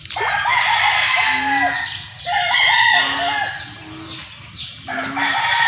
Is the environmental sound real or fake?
real